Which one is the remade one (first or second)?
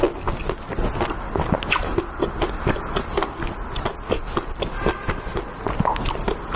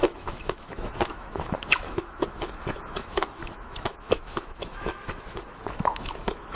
second